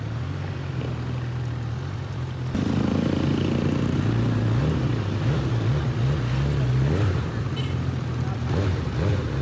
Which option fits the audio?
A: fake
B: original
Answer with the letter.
B